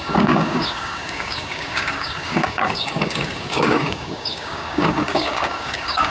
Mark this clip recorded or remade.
remade